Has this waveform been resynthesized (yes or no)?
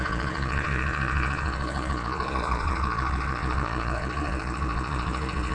yes